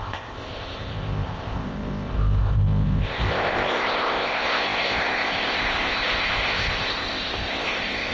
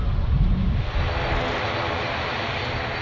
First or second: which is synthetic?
first